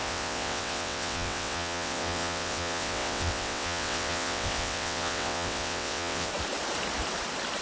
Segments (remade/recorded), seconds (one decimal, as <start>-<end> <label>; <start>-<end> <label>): 0.0-6.3 remade; 6.3-7.6 recorded